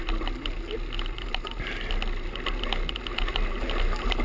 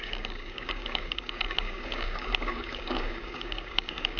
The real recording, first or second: first